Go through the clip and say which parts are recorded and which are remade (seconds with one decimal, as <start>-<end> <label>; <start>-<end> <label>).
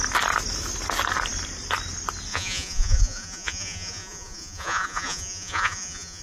0.0-2.3 recorded; 2.3-6.2 remade